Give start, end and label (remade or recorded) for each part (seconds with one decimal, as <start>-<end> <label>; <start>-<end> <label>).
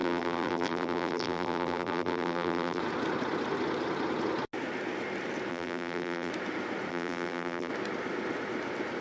0.0-2.8 remade; 2.8-5.5 recorded; 5.5-6.3 remade; 6.3-6.9 recorded; 6.9-7.7 remade; 7.7-9.0 recorded